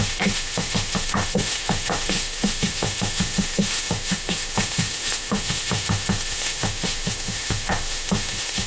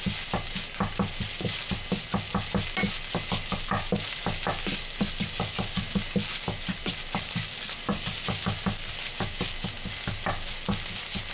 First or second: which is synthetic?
first